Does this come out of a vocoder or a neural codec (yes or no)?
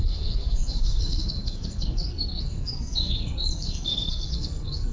yes